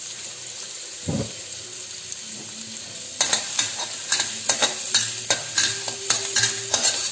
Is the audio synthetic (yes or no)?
no